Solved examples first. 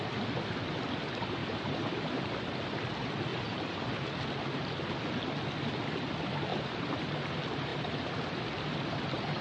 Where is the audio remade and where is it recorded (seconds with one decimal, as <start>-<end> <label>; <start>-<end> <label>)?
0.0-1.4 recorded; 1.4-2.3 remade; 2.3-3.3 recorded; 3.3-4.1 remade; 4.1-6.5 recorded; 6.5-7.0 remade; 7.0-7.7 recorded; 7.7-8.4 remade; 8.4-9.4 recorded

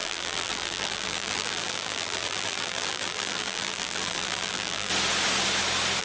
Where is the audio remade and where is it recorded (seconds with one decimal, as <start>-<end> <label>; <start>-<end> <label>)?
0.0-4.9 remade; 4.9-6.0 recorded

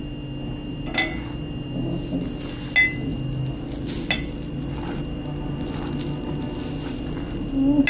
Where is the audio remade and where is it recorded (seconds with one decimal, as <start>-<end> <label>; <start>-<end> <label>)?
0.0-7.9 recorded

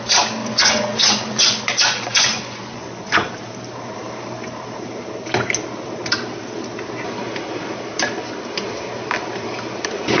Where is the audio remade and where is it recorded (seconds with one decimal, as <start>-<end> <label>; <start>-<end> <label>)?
0.0-0.4 recorded; 0.4-3.3 remade; 3.3-10.2 recorded

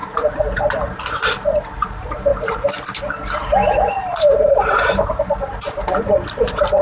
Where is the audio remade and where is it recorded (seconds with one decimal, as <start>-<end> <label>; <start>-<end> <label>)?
0.0-2.3 remade; 2.3-3.7 recorded; 3.7-6.8 remade

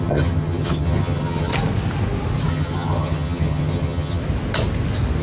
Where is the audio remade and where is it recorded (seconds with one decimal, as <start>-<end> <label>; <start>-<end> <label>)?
0.0-1.5 remade; 1.5-2.5 recorded; 2.5-4.2 remade; 4.2-5.2 recorded